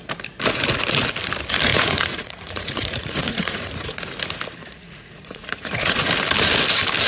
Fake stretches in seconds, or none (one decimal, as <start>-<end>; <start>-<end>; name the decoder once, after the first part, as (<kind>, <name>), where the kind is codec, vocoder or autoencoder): 1.7-4.0 (vocoder, Vocos); 4.6-6.1